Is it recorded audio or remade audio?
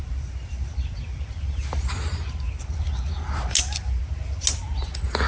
recorded